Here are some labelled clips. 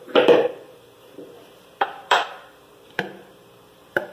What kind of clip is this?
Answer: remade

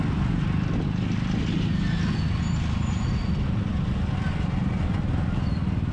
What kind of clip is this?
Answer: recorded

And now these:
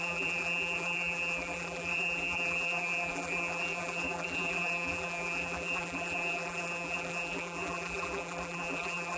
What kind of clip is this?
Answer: remade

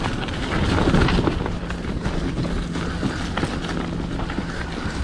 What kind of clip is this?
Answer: recorded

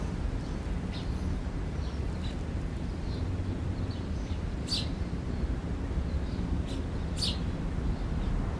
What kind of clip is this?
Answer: recorded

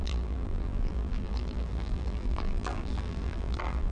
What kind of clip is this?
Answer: remade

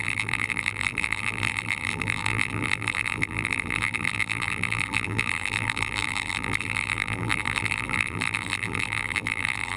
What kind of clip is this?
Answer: remade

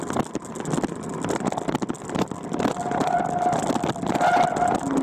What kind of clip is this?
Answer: recorded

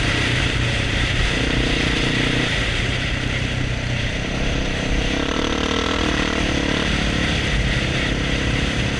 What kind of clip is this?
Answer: remade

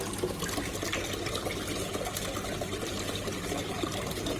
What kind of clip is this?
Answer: recorded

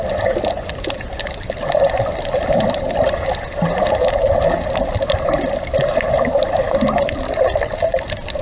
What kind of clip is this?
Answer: recorded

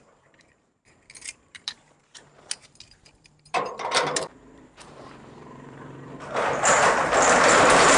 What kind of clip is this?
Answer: remade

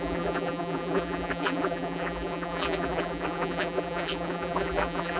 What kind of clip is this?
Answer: remade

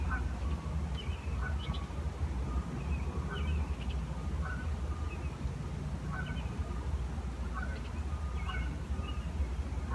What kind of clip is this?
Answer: recorded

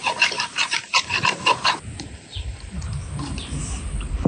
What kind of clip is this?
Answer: remade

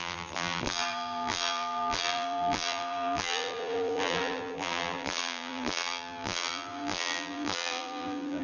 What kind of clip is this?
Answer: remade